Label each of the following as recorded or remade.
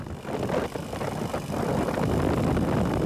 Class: recorded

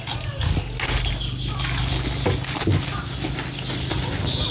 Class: recorded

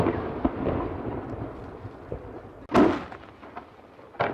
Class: recorded